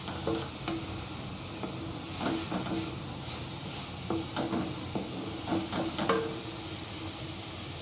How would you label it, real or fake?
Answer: real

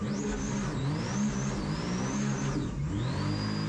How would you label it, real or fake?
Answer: real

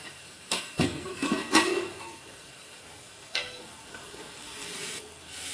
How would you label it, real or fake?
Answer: fake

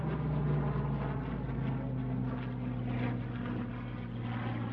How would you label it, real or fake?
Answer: real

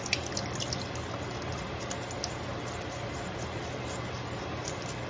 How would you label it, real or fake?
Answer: real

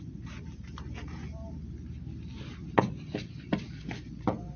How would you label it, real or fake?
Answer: real